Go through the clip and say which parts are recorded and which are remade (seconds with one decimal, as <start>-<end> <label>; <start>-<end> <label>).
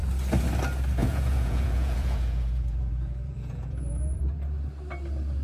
0.0-1.0 recorded; 1.0-4.2 remade; 4.2-5.4 recorded